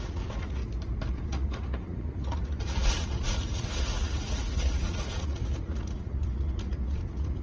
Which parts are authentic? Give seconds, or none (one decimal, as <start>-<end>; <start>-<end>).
0.6-1.1